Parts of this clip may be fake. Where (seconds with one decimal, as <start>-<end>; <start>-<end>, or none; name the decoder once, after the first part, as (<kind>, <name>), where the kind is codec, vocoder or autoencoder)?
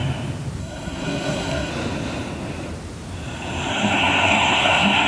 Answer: 0.6-1.7 (codec, SNAC); 3.7-5.1